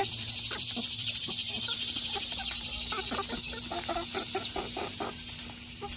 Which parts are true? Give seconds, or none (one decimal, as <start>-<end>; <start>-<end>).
3.6-6.0

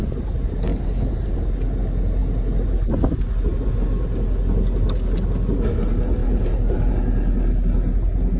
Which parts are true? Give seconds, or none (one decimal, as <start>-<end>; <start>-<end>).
0.0-0.7; 1.4-6.2; 6.9-8.4